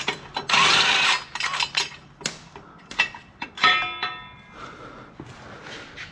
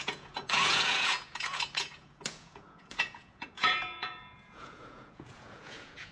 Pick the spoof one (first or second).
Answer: second